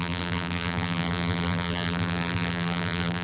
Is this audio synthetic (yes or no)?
yes